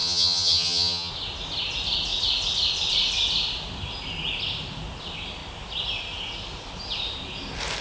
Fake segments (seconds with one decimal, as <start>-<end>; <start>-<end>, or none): 0.0-1.1